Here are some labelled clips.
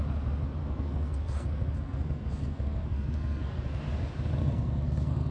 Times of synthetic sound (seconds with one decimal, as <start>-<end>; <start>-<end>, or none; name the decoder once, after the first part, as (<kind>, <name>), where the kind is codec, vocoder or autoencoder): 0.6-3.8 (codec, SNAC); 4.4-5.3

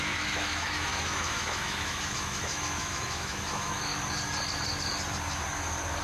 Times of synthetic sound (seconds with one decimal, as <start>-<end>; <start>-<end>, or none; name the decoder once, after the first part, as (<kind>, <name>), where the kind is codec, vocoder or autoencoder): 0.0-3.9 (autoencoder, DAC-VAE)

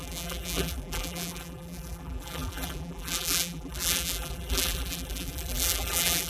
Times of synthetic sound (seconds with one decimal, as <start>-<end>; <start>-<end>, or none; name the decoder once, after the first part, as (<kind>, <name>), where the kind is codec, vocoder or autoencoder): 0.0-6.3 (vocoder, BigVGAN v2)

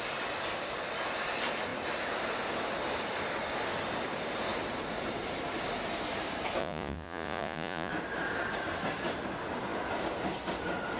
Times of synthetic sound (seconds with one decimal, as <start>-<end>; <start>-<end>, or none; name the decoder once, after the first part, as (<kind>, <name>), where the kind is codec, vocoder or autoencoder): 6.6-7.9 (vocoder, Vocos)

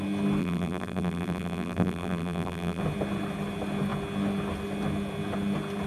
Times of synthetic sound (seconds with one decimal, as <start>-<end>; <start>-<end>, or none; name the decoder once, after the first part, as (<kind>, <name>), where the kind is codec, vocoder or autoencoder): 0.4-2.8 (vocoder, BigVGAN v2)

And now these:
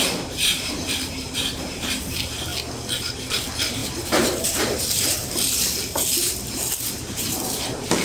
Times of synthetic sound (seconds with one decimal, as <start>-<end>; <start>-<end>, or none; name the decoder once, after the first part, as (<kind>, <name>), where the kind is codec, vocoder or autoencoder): 0.0-2.5 (vocoder, BigVGAN v2); 3.0-8.0